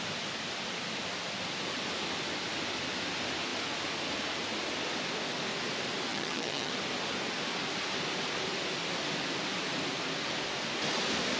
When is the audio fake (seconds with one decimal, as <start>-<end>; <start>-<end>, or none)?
6.1-6.7